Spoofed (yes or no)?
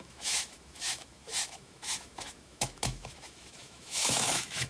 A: yes